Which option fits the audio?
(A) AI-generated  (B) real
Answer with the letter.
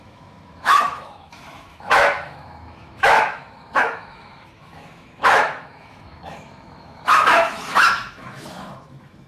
A